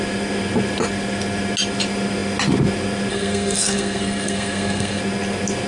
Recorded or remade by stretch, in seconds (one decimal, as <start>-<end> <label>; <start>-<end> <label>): 0.0-3.1 recorded; 3.1-5.0 remade; 5.0-5.7 recorded